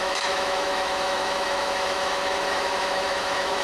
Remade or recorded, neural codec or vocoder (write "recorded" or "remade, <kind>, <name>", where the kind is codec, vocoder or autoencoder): remade, autoencoder, DAC-VAE